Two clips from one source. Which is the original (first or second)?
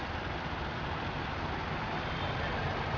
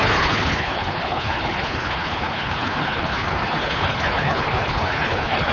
first